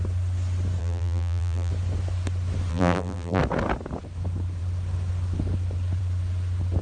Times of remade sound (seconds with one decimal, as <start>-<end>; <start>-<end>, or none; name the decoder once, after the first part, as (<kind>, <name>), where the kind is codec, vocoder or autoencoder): 0.8-1.7 (vocoder, BigVGAN v2); 2.7-3.4